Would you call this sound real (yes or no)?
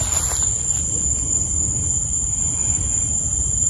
yes